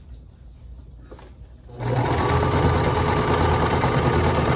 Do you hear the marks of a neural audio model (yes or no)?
no